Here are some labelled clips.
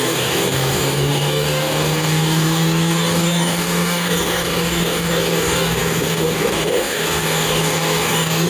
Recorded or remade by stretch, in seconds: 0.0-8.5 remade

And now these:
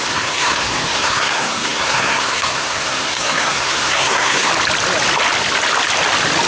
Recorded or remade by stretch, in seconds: 0.0-4.5 remade; 4.5-6.5 recorded

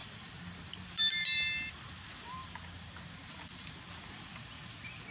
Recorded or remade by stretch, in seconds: 0.0-2.0 remade; 2.0-2.4 recorded; 2.4-3.7 remade; 3.7-5.1 recorded

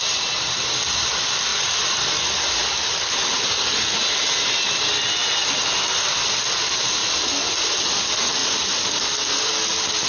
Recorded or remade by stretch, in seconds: 0.0-1.5 recorded; 1.5-2.6 remade; 2.6-7.0 recorded; 7.0-8.0 remade; 8.0-10.1 recorded

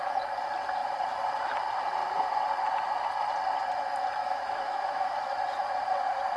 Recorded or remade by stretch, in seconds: 0.0-4.2 recorded; 4.2-5.2 remade; 5.2-6.4 recorded

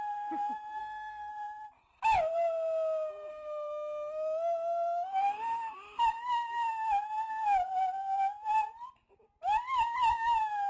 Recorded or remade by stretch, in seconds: 0.0-0.8 recorded; 0.8-1.3 remade; 1.3-3.3 recorded; 3.3-6.0 remade; 6.0-10.7 recorded

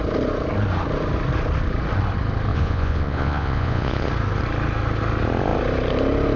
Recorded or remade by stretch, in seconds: 0.0-2.5 recorded; 2.5-4.1 remade; 4.1-6.4 recorded

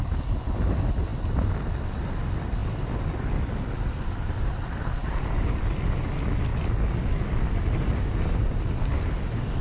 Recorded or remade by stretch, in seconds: 0.0-9.6 recorded